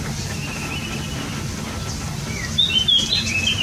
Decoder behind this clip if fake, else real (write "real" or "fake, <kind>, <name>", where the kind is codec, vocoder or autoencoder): real